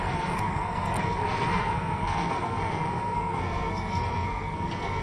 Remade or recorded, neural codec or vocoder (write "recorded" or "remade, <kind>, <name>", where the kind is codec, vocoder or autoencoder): remade, codec, SNAC